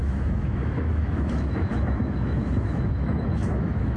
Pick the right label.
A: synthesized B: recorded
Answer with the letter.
A